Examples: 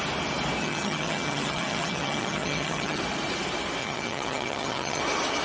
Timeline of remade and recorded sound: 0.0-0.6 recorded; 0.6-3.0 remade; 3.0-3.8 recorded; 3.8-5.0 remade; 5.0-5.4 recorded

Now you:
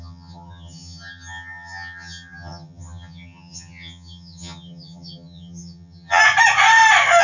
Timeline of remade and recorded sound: 0.0-6.2 remade; 6.2-7.2 recorded

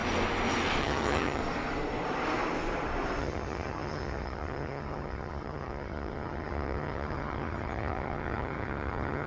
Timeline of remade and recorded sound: 0.0-0.8 recorded; 0.8-1.4 remade; 1.4-3.2 recorded; 3.2-9.3 remade